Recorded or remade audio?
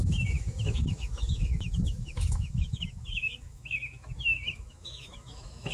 remade